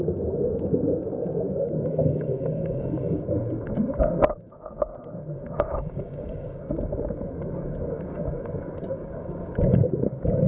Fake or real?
fake